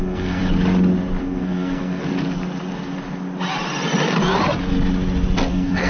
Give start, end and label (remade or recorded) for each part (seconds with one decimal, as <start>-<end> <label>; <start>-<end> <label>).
0.0-0.4 remade; 0.4-1.2 recorded; 1.2-2.0 remade; 2.0-5.5 recorded; 5.5-5.9 remade